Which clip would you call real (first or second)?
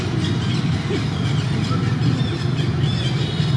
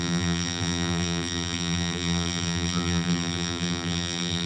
first